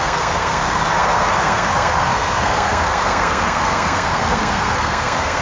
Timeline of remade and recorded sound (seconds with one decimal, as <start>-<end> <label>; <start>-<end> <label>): 0.0-5.4 remade